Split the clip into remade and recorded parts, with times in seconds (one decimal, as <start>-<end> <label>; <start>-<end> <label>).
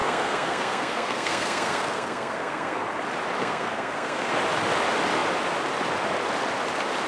0.0-2.8 remade; 2.8-3.4 recorded; 3.4-4.3 remade; 4.3-7.1 recorded